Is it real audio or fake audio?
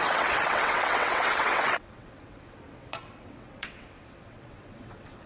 fake